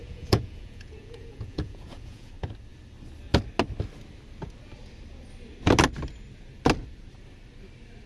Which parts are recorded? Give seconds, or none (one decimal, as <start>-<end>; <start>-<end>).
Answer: 2.3-8.1